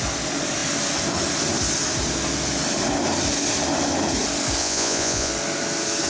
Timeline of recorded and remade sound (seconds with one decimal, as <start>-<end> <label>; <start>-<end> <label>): 0.0-4.6 recorded; 4.6-5.3 remade; 5.3-6.1 recorded